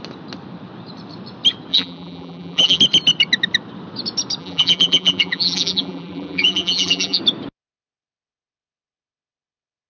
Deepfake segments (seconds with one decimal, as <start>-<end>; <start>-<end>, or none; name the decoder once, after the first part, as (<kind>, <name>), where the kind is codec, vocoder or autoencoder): 1.7-2.8 (vocoder, BigVGAN v2); 4.4-7.2